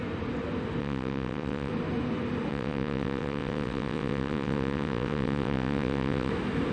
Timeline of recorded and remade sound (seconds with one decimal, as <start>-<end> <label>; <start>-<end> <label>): 0.0-0.8 recorded; 0.8-1.7 remade; 1.7-2.5 recorded; 2.5-6.3 remade; 6.3-6.7 recorded